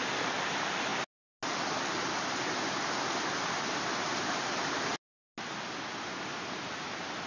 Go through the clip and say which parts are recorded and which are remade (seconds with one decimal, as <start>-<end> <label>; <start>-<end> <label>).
0.0-7.3 recorded